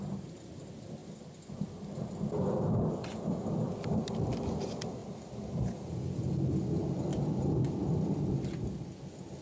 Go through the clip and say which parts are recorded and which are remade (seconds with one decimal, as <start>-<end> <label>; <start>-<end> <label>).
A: 0.0-5.0 recorded; 5.0-6.3 remade; 6.3-7.1 recorded; 7.1-8.3 remade; 8.3-9.4 recorded